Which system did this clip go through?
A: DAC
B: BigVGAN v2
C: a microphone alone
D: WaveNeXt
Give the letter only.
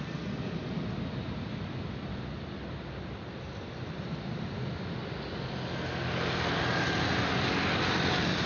C